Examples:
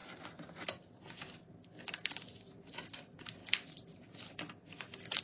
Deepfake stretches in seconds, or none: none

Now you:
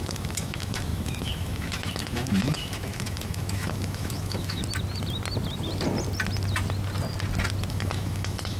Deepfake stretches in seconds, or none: 0.0-4.6; 7.7-8.6

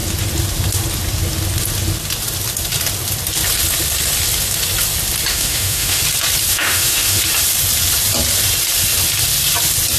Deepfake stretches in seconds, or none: 5.3-6.0; 6.5-7.2

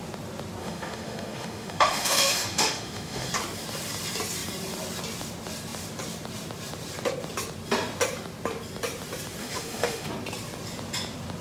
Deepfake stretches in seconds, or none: 0.6-3.3; 9.4-10.1

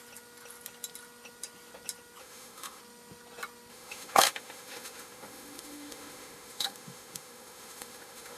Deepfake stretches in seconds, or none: 2.2-2.8; 3.7-8.4